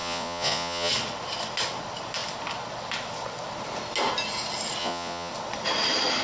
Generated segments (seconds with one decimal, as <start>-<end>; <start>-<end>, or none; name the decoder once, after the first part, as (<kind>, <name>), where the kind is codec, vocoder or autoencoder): 0.0-0.9 (vocoder, Vocos); 4.8-5.3